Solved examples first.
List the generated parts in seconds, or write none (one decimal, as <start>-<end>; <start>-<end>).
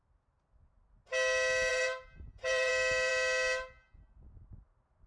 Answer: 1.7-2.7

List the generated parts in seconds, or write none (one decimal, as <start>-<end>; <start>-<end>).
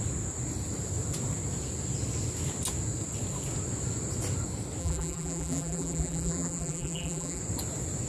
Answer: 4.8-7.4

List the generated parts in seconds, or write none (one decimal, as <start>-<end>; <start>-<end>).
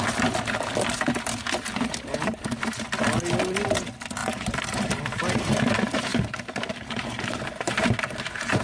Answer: 4.2-5.0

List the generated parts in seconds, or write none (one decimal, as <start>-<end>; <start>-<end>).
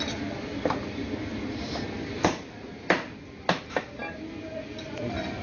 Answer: 0.0-1.0; 1.6-4.0; 4.6-5.4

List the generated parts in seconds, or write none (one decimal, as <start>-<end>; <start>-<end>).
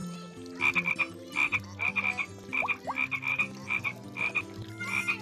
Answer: 3.3-5.2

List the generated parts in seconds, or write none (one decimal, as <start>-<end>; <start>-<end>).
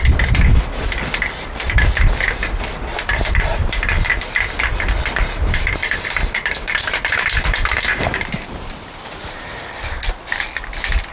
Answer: 3.1-4.1; 5.2-9.8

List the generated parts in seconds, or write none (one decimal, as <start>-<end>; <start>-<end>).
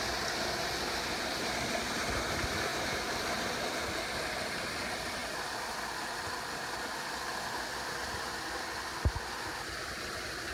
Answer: 2.7-3.7